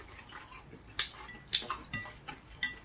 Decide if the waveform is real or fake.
real